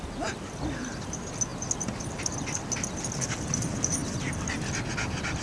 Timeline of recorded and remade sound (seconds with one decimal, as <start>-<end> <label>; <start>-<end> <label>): 0.0-5.4 recorded

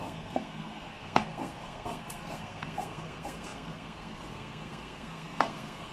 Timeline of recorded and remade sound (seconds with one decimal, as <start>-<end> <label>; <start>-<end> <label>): 0.0-5.9 remade